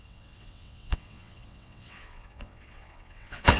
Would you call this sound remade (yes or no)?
yes